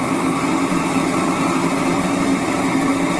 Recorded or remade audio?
recorded